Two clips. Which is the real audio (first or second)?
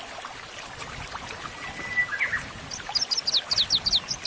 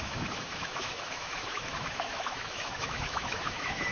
first